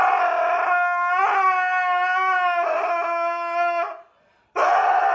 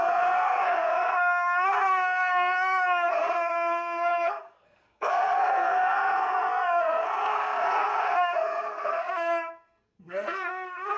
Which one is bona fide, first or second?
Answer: first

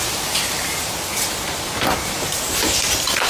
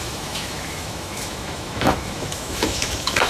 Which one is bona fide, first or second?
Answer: first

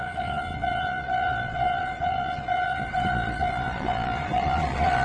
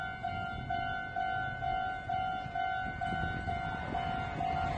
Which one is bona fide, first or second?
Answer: second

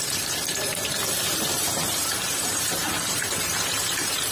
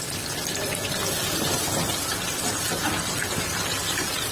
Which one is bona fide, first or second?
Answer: second